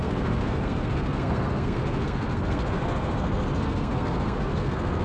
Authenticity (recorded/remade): remade